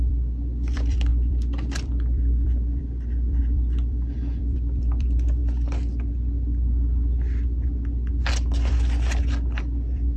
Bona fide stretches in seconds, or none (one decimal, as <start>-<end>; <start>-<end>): 5.4-9.6